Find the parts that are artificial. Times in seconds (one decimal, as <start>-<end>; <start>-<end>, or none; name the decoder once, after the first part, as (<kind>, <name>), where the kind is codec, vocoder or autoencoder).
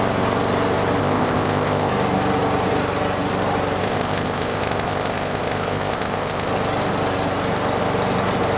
1.0-1.9 (codec, ZipCodec); 3.8-6.5